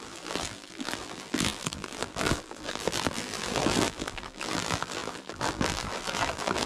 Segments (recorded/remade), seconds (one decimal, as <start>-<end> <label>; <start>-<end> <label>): 0.0-6.7 remade